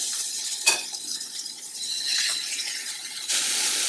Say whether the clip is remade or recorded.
remade